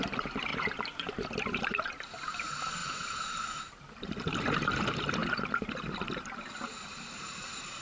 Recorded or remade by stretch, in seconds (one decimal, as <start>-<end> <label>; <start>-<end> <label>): 0.0-7.8 remade